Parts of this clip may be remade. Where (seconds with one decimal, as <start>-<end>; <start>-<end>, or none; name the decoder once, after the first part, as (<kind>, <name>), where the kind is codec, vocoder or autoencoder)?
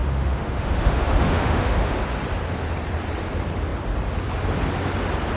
0.0-2.0 (autoencoder, DAC-VAE)